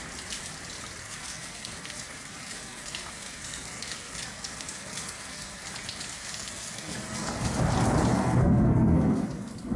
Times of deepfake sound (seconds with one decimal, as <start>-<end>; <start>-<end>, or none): 1.0-5.6; 6.1-7.6; 8.1-9.8